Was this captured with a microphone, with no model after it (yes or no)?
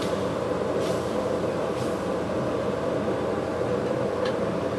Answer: no